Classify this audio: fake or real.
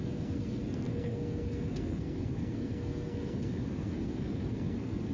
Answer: fake